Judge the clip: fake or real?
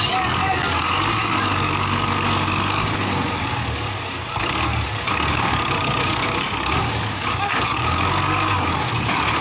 fake